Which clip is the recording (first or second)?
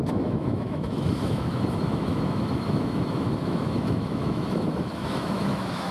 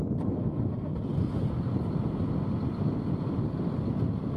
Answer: second